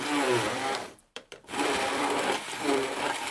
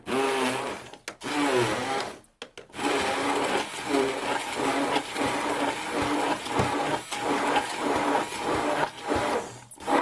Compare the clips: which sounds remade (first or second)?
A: first